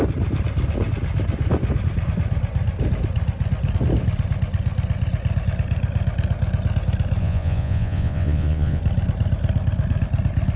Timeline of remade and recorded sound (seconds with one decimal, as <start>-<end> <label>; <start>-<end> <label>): 0.0-7.2 recorded; 7.2-8.8 remade; 8.8-10.6 recorded